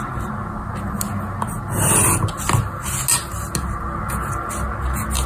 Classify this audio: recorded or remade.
recorded